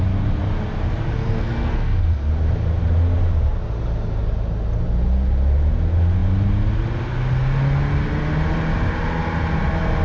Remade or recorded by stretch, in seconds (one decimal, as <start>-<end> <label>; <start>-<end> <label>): 0.0-1.2 recorded; 1.2-2.3 remade; 2.3-10.0 recorded